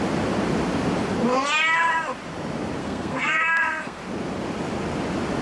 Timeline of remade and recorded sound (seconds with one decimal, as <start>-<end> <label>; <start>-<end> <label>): 0.0-2.8 recorded; 2.8-4.0 remade; 4.0-5.4 recorded